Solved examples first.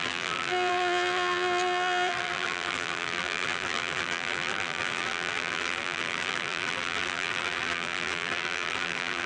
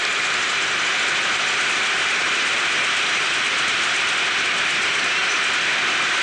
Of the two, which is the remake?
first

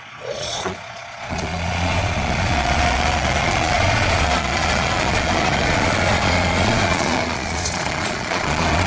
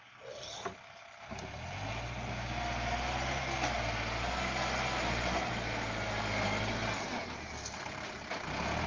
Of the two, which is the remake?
first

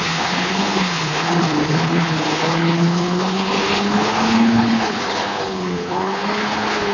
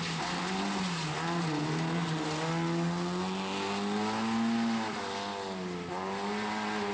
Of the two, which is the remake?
first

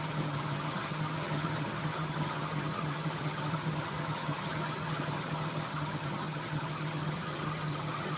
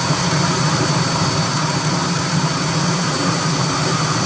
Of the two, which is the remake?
first